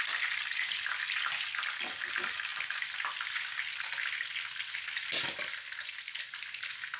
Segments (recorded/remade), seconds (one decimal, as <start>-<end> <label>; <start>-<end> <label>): 0.0-7.0 recorded